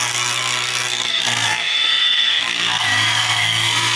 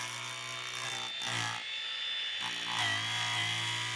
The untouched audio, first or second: second